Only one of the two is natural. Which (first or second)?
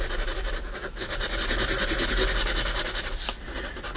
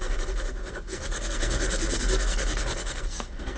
first